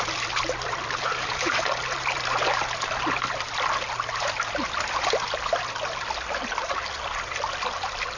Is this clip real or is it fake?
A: real